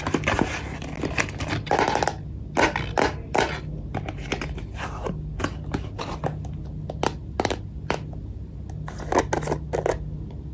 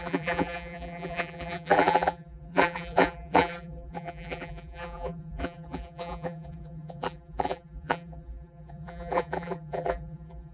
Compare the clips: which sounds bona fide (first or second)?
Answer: first